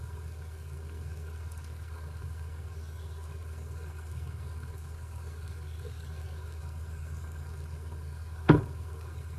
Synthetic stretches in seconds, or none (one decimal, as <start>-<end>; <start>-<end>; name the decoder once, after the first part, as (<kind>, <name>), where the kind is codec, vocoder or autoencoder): 0.0-9.4 (codec, SNAC)